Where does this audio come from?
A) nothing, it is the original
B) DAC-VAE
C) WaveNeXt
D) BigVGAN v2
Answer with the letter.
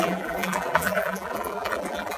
D